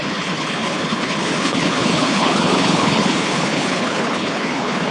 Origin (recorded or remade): remade